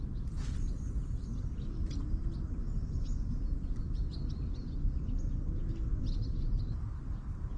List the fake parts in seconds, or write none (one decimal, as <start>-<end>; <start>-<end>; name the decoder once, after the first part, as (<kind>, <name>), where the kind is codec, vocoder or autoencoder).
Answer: none